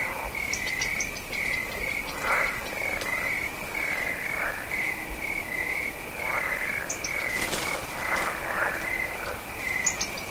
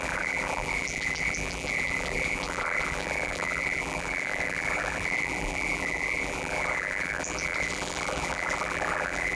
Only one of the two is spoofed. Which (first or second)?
second